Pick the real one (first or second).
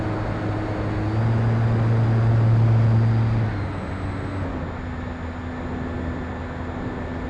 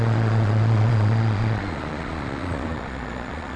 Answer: first